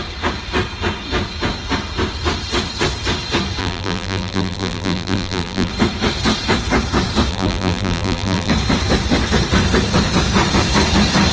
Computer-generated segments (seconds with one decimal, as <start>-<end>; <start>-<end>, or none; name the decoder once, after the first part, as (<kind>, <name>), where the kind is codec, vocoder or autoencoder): 3.6-5.7 (vocoder, BigVGAN v2); 7.3-8.5